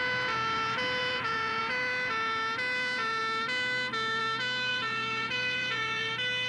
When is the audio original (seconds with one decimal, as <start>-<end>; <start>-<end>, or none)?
0.0-1.0; 1.6-4.7; 6.1-6.5